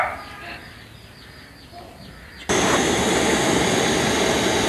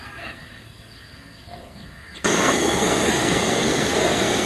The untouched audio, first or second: first